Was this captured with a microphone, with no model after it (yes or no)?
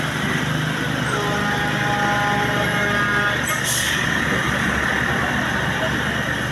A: yes